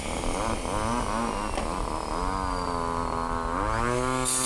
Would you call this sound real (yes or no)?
yes